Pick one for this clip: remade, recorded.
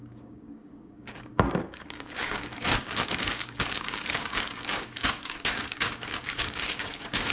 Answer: remade